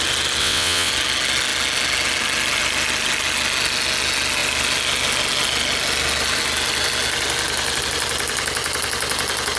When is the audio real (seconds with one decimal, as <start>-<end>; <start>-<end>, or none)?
0.0-0.4; 0.9-9.6